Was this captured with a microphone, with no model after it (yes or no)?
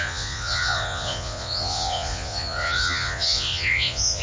no